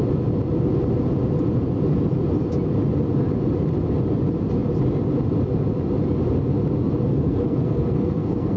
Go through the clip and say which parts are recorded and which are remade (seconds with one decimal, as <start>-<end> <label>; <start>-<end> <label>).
0.0-7.1 recorded; 7.1-8.6 remade